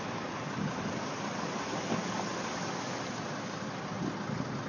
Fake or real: real